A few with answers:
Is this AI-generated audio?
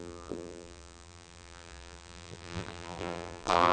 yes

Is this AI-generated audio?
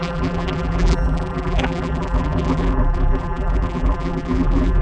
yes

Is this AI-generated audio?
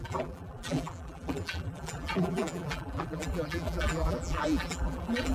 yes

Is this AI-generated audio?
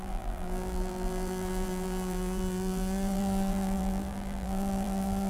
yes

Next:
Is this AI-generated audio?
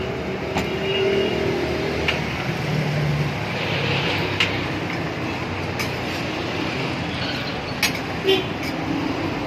no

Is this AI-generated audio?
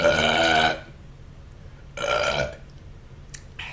no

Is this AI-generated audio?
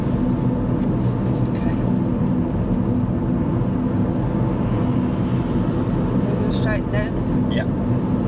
no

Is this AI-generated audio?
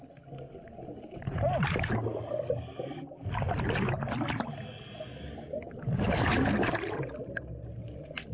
no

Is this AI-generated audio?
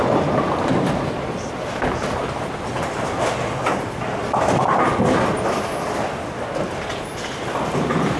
no